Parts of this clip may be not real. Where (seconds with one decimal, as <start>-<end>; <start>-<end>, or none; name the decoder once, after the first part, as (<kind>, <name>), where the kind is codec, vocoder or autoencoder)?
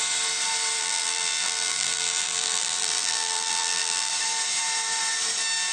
0.8-4.1 (vocoder, BigVGAN v2)